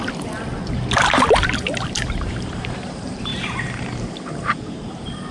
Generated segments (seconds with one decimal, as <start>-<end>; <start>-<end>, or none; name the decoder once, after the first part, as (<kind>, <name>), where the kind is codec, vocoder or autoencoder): 1.3-5.3 (vocoder, BigVGAN v2)